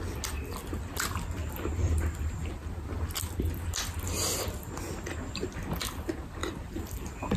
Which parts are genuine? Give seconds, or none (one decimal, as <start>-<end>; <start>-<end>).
0.0-1.4; 3.5-6.4